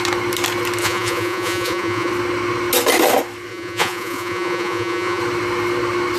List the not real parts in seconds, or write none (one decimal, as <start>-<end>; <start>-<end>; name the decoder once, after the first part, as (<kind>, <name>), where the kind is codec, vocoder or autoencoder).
0.8-2.1 (vocoder, Vocos); 3.5-5.2